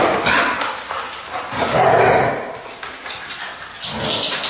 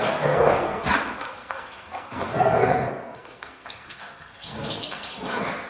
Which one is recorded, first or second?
first